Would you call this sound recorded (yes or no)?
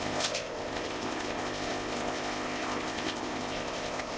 no